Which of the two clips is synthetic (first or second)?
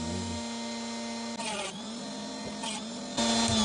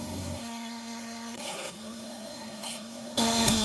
second